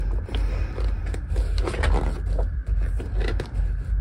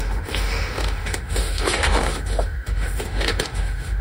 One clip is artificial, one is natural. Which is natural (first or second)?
first